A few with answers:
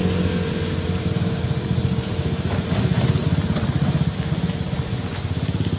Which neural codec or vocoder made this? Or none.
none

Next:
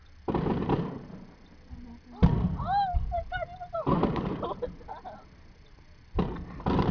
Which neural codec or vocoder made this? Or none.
none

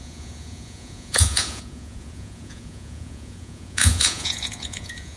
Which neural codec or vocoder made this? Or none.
vocoder, Vocos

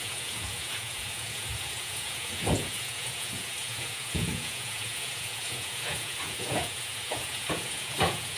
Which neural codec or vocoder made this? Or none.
vocoder, Vocos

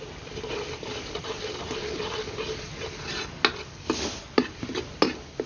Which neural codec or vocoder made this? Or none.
none